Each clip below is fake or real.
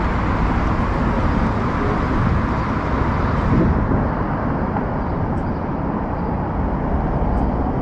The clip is real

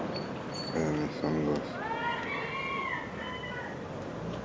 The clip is real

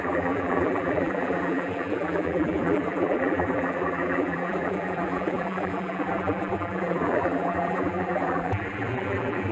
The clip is fake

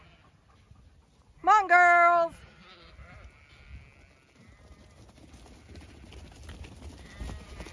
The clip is real